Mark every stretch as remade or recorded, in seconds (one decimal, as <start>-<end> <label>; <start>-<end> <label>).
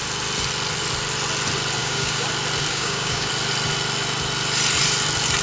0.0-1.8 recorded; 1.8-2.3 remade; 2.3-2.7 recorded; 2.7-3.3 remade; 3.3-5.4 recorded